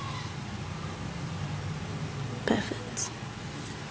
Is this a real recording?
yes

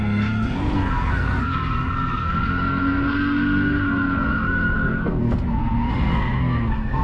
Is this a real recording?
no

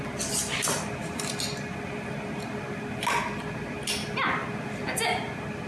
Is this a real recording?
yes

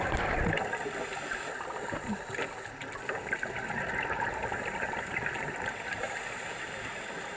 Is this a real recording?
yes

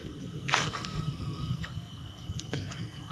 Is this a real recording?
no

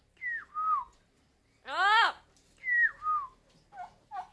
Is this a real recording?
yes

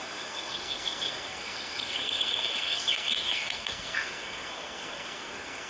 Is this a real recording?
no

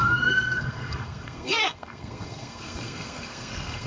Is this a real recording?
no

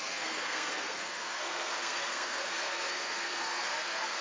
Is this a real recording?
no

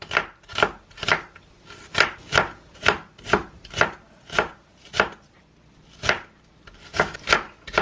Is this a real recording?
yes